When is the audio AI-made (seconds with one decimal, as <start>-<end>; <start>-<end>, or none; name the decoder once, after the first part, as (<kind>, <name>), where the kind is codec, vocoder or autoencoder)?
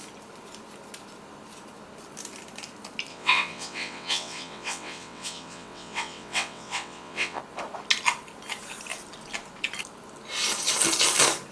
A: 3.1-7.4 (vocoder, WaveNeXt)